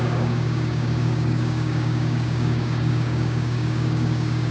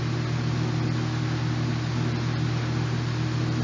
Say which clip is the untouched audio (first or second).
second